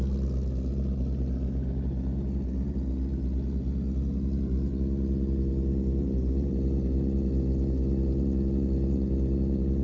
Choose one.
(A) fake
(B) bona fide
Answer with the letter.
B